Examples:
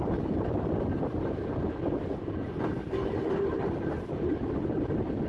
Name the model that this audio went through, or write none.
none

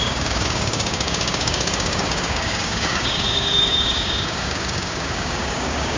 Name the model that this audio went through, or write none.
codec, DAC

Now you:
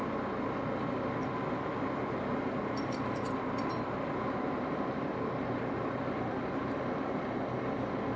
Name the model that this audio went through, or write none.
vocoder, BigVGAN v2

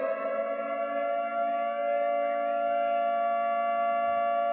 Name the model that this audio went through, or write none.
none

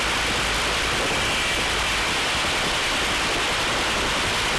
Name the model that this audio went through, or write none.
none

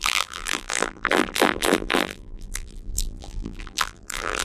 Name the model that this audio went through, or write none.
vocoder, BigVGAN v2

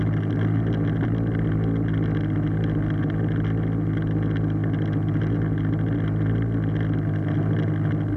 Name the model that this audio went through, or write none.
none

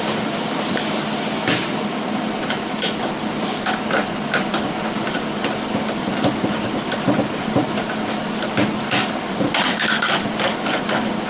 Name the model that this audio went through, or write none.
none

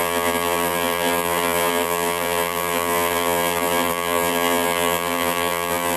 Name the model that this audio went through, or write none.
vocoder, BigVGAN v2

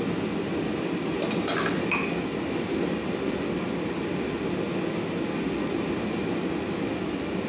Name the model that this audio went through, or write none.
none